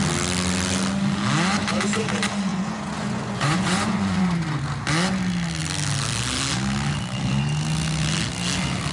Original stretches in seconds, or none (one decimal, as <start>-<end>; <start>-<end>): 0.0-2.5; 4.2-8.9